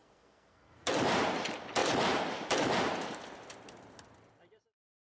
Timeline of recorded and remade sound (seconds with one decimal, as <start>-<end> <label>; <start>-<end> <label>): 0.0-0.9 remade; 0.9-5.2 recorded